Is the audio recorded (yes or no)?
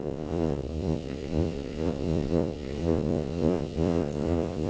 no